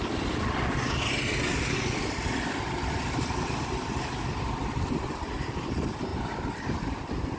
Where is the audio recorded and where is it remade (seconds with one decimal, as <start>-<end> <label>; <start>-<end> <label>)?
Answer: 0.0-7.4 recorded